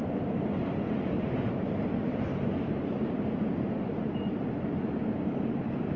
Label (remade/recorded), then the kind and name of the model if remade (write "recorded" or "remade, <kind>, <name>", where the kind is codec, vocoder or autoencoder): remade, vocoder, BigVGAN v2